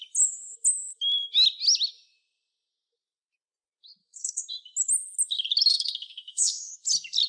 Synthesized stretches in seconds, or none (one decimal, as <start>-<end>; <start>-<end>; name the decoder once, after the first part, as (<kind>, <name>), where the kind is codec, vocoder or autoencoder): 4.0-4.5 (codec, SNAC); 5.7-6.7